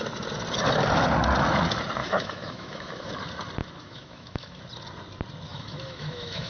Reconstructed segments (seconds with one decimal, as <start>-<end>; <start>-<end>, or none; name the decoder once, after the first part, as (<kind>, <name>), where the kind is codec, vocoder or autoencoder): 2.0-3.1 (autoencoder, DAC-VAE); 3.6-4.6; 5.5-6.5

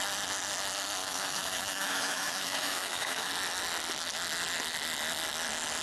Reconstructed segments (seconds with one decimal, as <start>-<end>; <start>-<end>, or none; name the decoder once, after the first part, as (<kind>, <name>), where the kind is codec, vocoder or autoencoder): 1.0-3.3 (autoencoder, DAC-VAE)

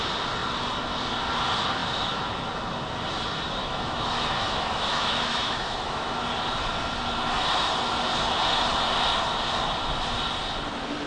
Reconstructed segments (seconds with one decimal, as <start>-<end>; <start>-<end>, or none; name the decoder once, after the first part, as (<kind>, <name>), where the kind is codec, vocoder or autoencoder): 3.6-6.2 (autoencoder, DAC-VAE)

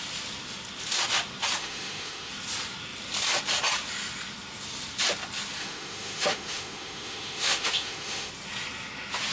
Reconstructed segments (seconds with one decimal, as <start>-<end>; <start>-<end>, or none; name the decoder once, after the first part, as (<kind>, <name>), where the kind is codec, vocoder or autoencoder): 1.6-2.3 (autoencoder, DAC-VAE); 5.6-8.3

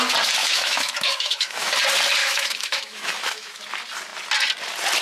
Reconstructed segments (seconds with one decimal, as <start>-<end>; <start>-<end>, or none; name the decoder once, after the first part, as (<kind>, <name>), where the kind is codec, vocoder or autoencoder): 0.4-1.7 (autoencoder, DAC-VAE); 2.2-3.6

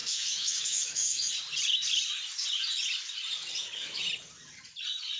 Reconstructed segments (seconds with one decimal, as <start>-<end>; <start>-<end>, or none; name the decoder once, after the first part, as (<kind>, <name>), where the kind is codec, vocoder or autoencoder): 0.0-1.3 (autoencoder, DAC-VAE); 3.6-4.1

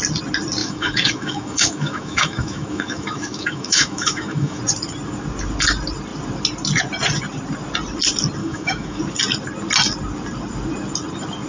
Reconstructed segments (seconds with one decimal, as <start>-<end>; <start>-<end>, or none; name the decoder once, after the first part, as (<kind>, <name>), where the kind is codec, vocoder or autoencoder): 0.6-4.6 (autoencoder, DAC-VAE); 8.4-9.0

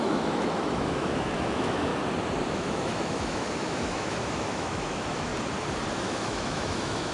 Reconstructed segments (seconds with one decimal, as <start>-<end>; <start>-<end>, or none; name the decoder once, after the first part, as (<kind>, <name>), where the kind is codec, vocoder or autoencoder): 0.0-1.9 (autoencoder, DAC-VAE); 2.5-5.3; 6.0-7.1